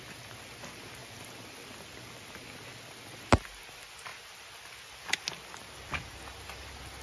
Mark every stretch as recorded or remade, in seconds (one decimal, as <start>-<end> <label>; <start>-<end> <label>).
0.0-7.0 recorded